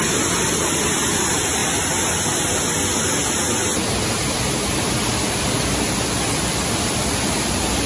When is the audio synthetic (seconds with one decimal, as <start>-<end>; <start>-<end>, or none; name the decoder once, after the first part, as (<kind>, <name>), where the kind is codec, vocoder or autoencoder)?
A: none